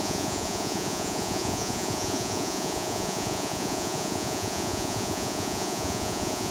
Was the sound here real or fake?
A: fake